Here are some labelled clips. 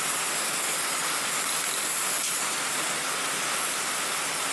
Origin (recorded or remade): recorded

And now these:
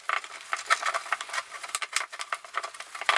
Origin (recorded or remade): recorded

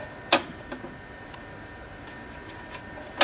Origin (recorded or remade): recorded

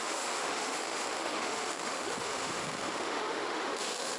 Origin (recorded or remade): remade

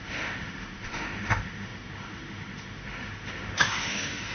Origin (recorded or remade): remade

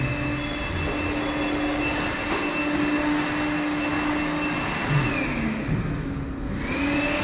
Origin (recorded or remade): recorded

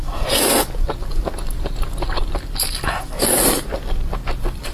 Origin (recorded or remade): recorded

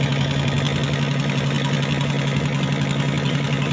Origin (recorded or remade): recorded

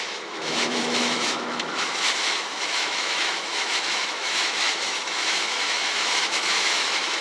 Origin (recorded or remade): remade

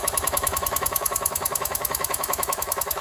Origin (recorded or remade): remade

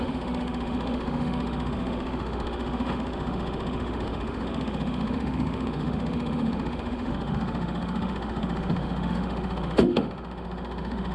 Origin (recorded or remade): remade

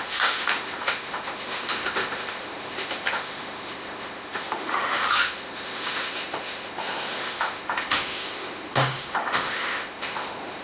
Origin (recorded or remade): remade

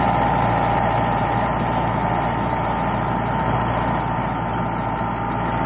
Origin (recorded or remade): recorded